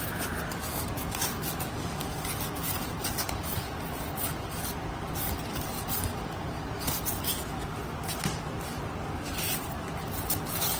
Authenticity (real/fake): real